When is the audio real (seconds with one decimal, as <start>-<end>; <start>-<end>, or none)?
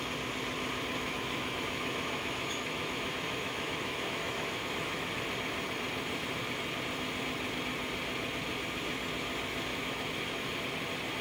0.0-1.0; 5.1-9.7; 10.5-11.2